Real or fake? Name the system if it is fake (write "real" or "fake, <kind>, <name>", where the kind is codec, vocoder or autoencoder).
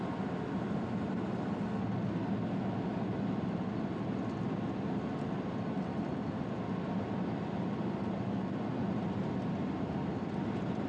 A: real